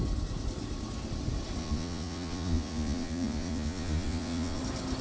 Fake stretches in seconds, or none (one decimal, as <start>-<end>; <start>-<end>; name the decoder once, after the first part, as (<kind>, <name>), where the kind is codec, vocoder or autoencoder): 1.6-4.6 (vocoder, Vocos)